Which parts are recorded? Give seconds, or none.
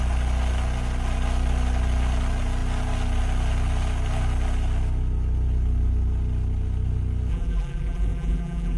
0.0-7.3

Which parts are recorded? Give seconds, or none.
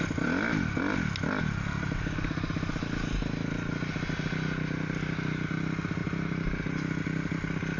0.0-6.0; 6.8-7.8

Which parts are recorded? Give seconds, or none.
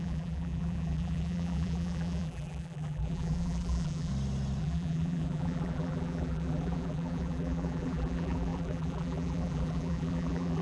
4.1-4.6